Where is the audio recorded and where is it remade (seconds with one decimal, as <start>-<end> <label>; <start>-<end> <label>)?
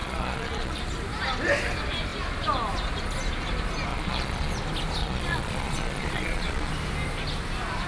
0.0-0.8 remade; 0.8-3.9 recorded; 3.9-4.5 remade; 4.5-5.0 recorded; 5.0-6.7 remade; 6.7-7.9 recorded